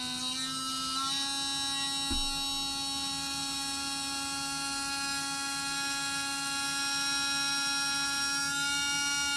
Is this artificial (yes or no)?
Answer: no